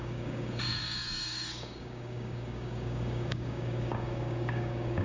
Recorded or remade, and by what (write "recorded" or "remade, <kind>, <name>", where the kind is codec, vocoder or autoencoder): remade, codec, DAC